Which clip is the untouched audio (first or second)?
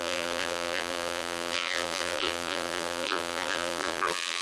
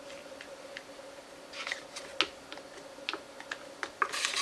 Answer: second